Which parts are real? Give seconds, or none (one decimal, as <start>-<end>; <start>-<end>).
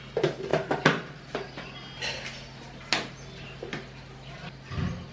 0.0-5.1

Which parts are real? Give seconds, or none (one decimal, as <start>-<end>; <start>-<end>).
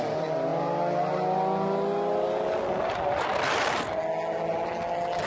0.0-5.3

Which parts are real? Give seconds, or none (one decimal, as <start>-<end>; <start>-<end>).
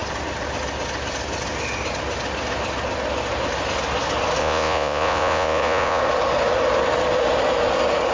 0.0-4.4; 6.0-8.1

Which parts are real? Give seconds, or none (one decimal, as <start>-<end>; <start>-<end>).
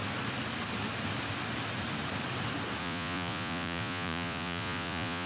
0.0-2.8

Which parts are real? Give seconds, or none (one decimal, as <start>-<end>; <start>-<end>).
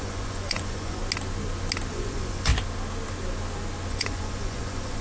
1.0-1.9; 2.5-3.9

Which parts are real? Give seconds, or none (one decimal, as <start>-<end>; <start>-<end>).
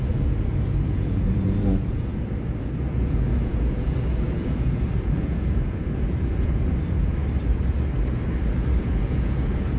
7.2-8.8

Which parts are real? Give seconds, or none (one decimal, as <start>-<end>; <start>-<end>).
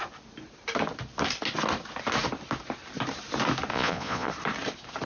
0.0-3.7; 4.3-5.1